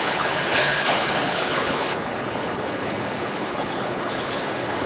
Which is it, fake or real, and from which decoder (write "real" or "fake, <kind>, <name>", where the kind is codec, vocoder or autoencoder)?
fake, codec, HILCodec